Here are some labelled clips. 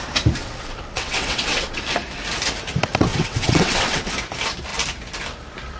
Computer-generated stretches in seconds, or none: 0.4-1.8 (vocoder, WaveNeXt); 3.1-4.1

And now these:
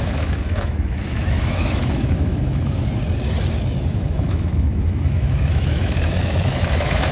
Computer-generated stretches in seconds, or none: 0.0-2.8 (autoencoder, DAC-VAE); 3.9-7.1

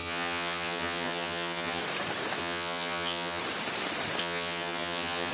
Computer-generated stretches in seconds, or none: 0.0-1.8 (vocoder, HiFi-GAN); 2.4-3.4; 4.2-5.3

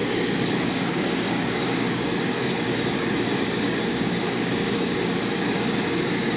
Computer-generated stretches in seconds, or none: 0.0-6.4 (codec, DAC)

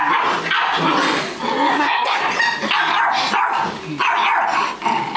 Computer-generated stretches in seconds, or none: 1.7-2.2 (codec, SNAC)

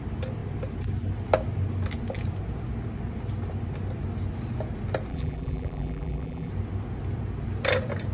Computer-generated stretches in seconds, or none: 5.1-6.5 (vocoder, BigVGAN v2)